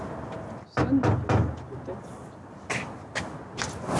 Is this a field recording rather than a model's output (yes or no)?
yes